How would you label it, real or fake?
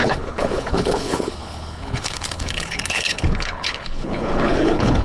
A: fake